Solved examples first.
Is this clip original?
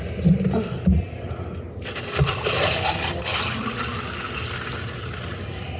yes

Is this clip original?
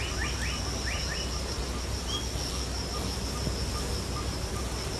yes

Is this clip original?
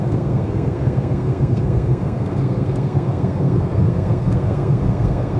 no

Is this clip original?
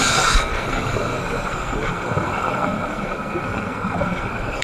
no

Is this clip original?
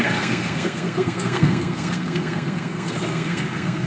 no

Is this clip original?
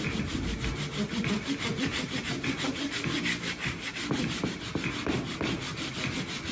yes